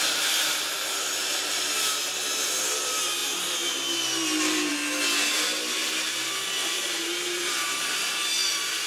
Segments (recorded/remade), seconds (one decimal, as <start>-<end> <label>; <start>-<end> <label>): 0.0-8.9 remade